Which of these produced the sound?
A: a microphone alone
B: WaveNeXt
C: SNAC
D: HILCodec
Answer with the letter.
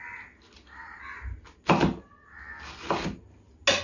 A